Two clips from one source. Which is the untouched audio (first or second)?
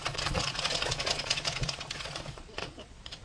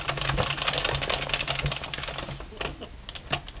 second